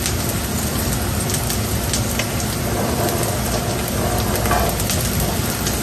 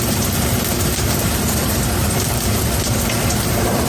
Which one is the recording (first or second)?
first